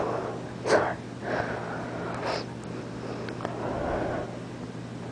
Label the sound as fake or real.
real